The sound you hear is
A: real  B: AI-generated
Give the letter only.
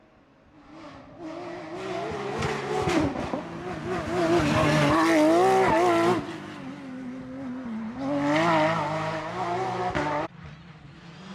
A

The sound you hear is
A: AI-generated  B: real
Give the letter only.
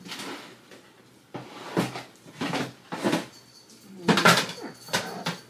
B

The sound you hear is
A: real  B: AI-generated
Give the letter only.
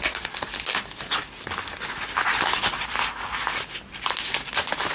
A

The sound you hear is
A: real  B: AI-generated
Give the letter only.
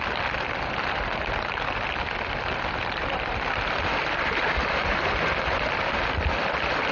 A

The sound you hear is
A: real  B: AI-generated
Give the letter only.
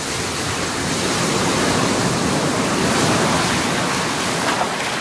A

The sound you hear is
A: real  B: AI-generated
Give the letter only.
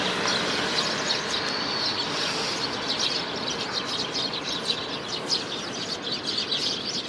A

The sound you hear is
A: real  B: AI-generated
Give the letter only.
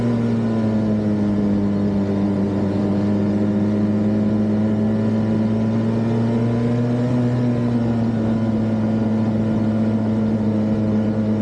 A